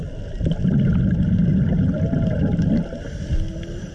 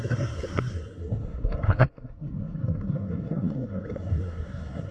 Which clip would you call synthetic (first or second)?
second